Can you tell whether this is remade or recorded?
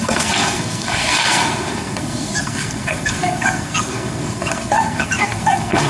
remade